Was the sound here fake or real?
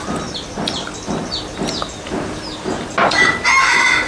real